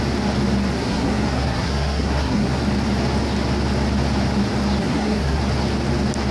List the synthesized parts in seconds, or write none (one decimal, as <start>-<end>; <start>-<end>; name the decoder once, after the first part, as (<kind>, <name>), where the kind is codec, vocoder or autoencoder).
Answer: 0.7-2.6 (codec, SNAC); 4.8-5.4